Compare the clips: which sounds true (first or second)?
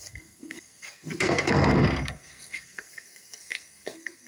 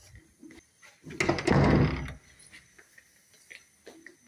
second